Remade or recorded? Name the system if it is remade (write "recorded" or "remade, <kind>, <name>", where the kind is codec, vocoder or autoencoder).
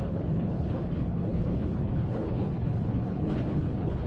remade, codec, HILCodec